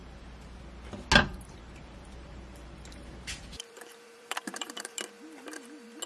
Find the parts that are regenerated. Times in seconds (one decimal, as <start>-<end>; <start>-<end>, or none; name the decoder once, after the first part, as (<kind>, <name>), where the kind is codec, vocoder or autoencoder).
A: 0.0-0.6 (vocoder, BigVGAN v2); 1.3-5.0